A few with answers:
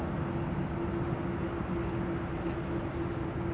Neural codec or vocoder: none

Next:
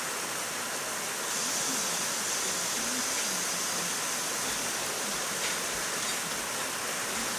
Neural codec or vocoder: none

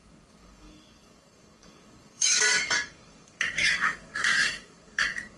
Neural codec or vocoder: codec, DAC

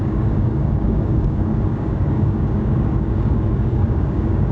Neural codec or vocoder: codec, DAC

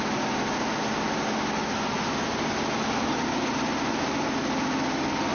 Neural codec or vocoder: none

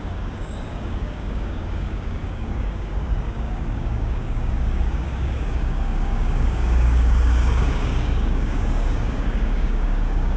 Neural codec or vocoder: codec, DAC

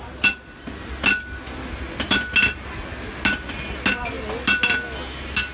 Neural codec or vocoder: none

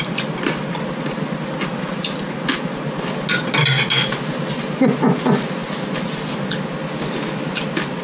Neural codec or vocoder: none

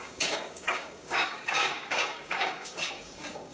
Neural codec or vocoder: codec, DAC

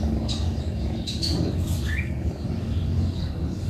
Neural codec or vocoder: codec, DAC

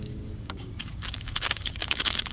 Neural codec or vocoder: codec, DAC